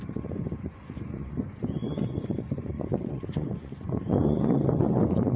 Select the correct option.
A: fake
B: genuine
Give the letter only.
A